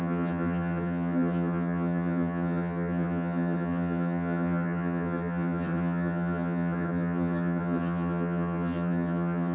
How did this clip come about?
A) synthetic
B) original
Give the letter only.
A